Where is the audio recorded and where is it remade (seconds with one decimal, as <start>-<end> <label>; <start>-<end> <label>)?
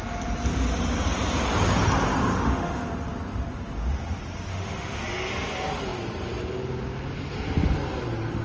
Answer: 0.0-2.3 recorded; 2.3-2.9 remade; 2.9-4.5 recorded; 4.5-5.0 remade; 5.0-8.4 recorded